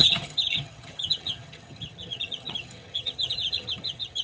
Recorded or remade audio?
remade